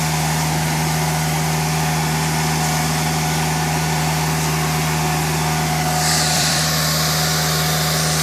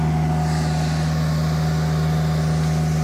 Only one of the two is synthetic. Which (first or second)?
first